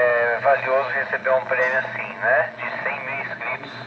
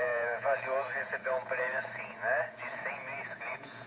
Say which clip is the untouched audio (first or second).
first